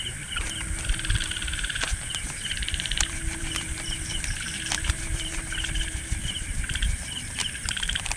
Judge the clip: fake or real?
fake